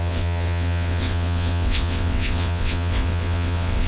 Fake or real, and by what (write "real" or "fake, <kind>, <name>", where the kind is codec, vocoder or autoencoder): fake, vocoder, WaveNeXt